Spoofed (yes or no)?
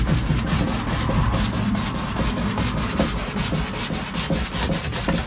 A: no